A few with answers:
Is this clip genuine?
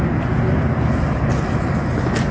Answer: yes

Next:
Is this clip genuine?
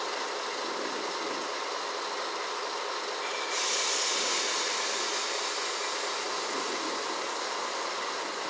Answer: yes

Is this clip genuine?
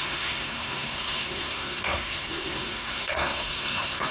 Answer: no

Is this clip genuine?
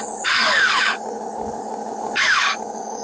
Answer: no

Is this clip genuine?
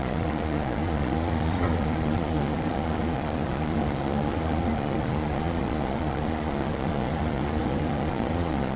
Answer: no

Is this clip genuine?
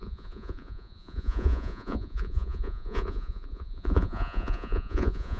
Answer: no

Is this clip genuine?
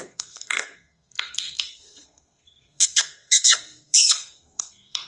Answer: no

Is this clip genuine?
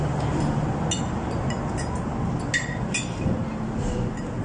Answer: yes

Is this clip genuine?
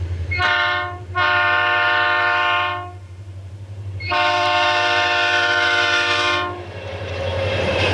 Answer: no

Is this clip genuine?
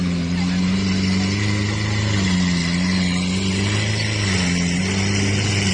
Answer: yes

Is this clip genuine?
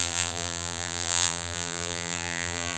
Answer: no